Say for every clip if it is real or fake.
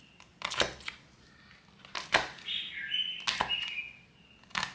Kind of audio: real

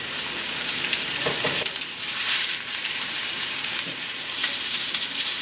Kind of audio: fake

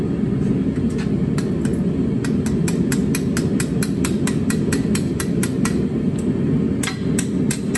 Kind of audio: real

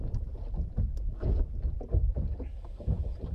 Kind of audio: real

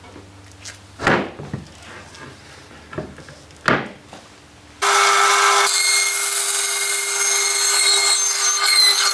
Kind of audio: real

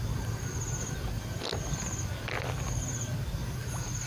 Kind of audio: real